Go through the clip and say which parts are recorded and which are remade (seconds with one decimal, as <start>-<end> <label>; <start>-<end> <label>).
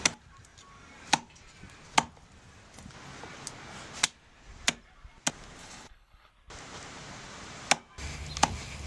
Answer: 0.0-5.6 recorded; 5.6-6.3 remade; 6.3-8.9 recorded